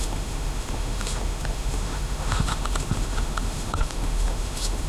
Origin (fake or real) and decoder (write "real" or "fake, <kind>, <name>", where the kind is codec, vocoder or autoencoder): fake, autoencoder, DAC-VAE